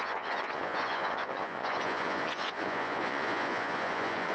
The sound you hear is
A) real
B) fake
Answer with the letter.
B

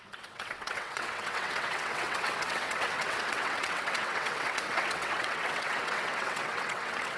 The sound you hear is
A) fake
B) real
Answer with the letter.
A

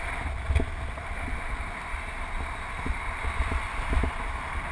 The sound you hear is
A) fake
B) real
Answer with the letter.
B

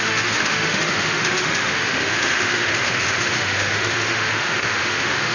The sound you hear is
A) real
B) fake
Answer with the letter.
B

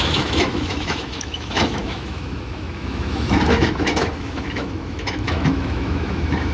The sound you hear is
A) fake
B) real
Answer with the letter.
A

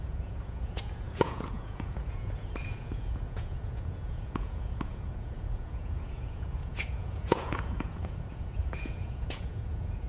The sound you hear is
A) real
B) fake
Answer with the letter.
B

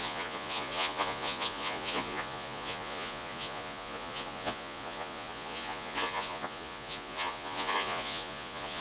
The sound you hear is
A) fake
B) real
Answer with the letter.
A